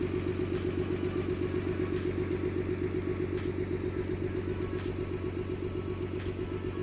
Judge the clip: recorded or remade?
recorded